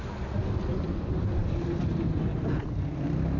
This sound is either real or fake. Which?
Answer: real